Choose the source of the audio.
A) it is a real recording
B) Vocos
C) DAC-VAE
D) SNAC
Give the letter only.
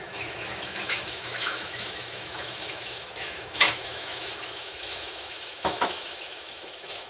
C